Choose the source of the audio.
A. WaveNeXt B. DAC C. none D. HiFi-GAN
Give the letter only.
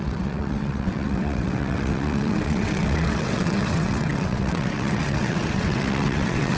A